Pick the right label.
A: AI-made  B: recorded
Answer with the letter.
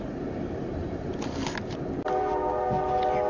B